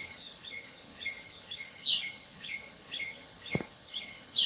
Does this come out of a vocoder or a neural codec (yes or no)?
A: yes